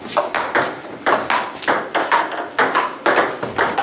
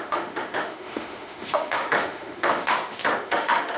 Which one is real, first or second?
first